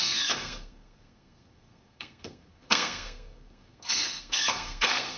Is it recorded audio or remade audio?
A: remade